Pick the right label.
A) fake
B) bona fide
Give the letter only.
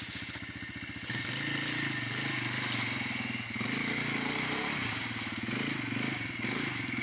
B